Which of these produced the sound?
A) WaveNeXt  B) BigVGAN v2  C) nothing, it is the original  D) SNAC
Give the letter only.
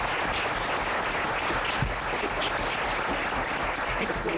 C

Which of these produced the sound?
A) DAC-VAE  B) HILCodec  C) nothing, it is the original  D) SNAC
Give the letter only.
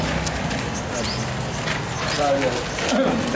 C